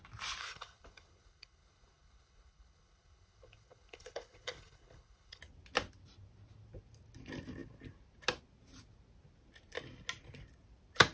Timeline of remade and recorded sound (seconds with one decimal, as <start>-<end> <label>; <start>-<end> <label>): 0.0-0.4 recorded; 0.4-5.4 remade; 5.4-11.1 recorded